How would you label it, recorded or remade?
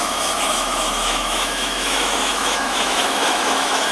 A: remade